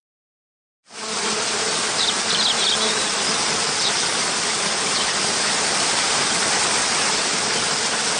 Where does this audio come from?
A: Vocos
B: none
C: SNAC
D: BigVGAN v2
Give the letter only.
D